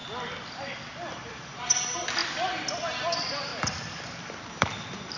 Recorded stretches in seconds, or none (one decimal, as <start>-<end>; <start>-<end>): 0.0-1.1; 2.2-2.7; 3.5-4.2